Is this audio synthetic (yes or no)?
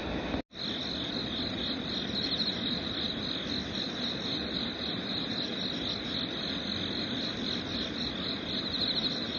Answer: no